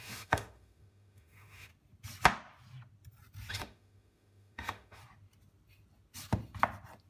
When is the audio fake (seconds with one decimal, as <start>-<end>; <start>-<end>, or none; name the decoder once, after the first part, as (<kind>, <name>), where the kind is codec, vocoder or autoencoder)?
0.0-1.7 (autoencoder, DAC-VAE); 3.5-5.0